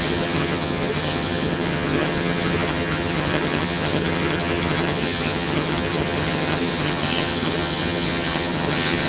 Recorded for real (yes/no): no